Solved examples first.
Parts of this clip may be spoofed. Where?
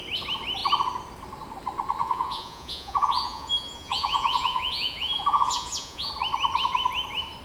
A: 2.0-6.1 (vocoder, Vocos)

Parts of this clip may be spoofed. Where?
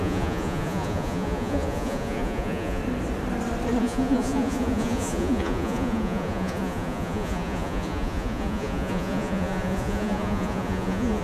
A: 0.0-2.8 (vocoder, Vocos); 3.8-11.2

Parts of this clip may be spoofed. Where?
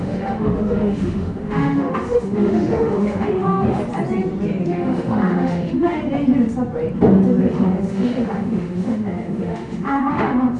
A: 0.0-3.8 (autoencoder, DAC-VAE); 4.6-6.0; 7.4-10.6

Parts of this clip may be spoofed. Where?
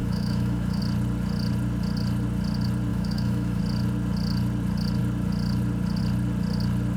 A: 0.0-0.8 (autoencoder, DAC-VAE); 2.9-3.6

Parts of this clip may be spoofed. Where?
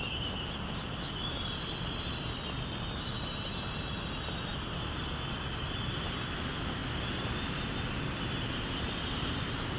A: none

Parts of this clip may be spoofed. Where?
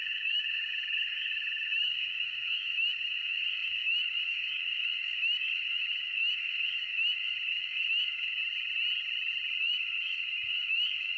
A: 0.0-8.4 (autoencoder, DAC-VAE); 9.6-11.2